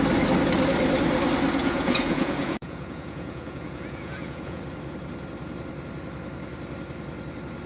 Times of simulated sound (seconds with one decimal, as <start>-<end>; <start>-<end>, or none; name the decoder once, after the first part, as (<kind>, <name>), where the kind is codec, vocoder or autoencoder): 1.6-4.6 (vocoder, Vocos)